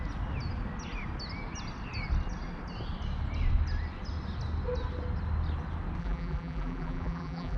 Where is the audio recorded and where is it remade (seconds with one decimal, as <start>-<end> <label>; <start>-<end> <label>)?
0.0-6.0 recorded; 6.0-7.6 remade